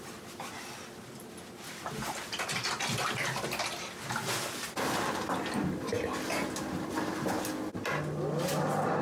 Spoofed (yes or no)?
no